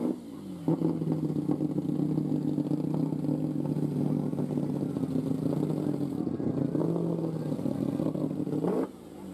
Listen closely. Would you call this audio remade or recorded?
recorded